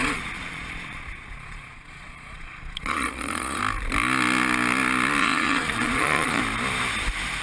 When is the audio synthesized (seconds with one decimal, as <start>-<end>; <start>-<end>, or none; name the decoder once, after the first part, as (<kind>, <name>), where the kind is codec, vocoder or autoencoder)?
0.0-3.6 (vocoder, Vocos); 5.2-6.4